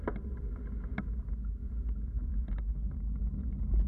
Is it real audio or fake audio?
real